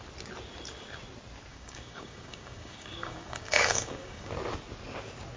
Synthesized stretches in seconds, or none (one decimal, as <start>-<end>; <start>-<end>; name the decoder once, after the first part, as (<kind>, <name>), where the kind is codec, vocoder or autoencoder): 1.5-4.3 (codec, DAC)